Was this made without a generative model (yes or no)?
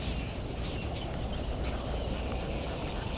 yes